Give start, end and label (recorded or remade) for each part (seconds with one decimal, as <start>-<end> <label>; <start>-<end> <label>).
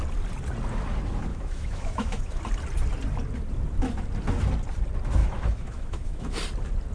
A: 0.0-1.3 recorded; 1.3-2.4 remade; 2.4-5.2 recorded; 5.2-6.3 remade; 6.3-6.9 recorded